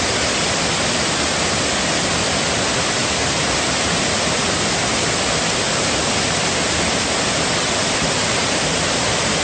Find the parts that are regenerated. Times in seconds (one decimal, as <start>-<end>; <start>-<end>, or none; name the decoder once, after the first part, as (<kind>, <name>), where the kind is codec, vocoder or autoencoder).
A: 3.0-4.1 (vocoder, BigVGAN v2); 7.8-8.4

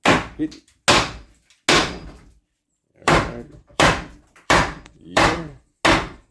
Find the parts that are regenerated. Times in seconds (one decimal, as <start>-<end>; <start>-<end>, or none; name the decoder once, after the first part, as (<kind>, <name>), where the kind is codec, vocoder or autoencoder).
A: 1.8-5.6 (vocoder, BigVGAN v2)

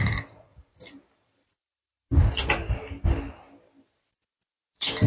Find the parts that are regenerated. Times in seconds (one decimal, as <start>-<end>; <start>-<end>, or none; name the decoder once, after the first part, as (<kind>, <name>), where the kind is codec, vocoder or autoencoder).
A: 0.5-2.2 (vocoder, BigVGAN v2)